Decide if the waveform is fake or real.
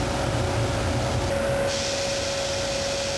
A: real